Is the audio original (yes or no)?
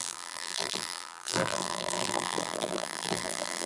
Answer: no